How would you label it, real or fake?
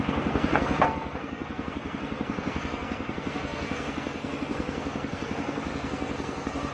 fake